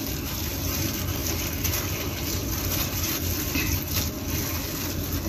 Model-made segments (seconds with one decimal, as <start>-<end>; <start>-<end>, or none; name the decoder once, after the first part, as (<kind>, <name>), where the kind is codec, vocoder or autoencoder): none